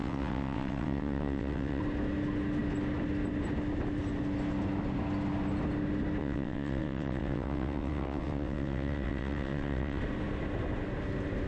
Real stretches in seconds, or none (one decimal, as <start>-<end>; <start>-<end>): 1.8-6.2; 10.0-11.5